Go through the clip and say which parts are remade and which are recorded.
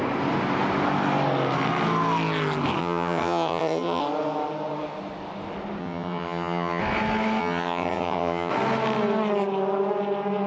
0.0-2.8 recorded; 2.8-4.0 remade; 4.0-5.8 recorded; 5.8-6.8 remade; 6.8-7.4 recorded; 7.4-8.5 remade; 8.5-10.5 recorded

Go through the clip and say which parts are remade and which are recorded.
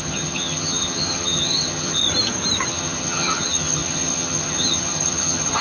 0.0-2.0 remade; 2.0-2.7 recorded; 2.7-5.6 remade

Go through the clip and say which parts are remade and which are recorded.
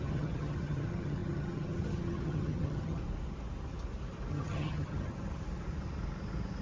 0.0-3.0 remade; 3.0-4.3 recorded; 4.3-5.1 remade; 5.1-6.6 recorded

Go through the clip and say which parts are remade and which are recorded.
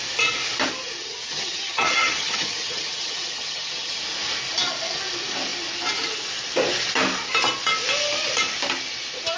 0.0-1.0 recorded; 1.0-4.0 remade; 4.0-9.4 recorded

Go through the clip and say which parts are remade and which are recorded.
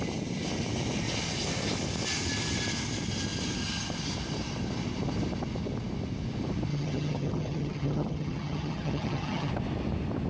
0.0-6.7 recorded; 6.7-9.5 remade; 9.5-10.3 recorded